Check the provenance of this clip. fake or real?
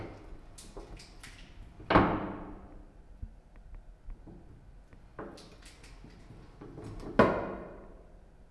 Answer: real